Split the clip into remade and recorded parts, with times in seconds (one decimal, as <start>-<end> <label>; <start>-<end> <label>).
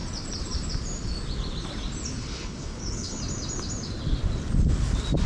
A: 0.0-2.2 recorded; 2.2-3.2 remade; 3.2-5.3 recorded